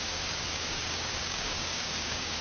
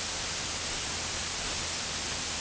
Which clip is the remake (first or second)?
first